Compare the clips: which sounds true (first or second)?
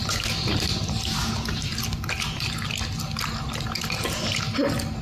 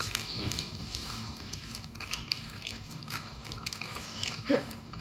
first